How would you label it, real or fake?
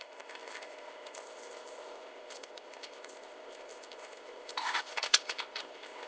fake